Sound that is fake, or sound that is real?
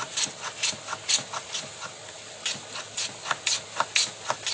real